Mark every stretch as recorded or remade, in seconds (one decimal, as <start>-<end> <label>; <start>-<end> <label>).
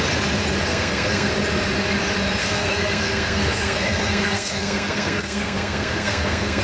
0.0-0.7 recorded; 0.7-1.3 remade; 1.3-2.4 recorded; 2.4-6.6 remade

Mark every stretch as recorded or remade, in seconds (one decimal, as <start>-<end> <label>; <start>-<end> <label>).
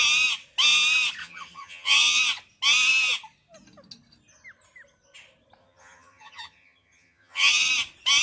0.0-1.2 recorded; 1.2-2.2 remade; 2.2-5.6 recorded; 5.6-7.7 remade; 7.7-8.2 recorded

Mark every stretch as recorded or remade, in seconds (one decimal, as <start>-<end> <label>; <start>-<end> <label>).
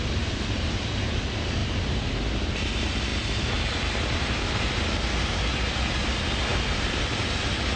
0.0-6.5 recorded; 6.5-7.0 remade; 7.0-7.8 recorded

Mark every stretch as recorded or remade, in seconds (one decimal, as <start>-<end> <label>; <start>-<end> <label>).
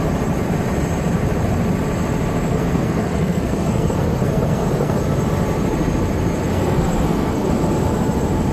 0.0-2.5 recorded; 2.5-5.0 remade; 5.0-6.5 recorded; 6.5-7.5 remade; 7.5-8.5 recorded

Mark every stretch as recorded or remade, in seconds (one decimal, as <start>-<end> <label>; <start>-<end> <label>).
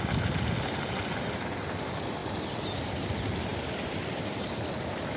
0.0-5.2 recorded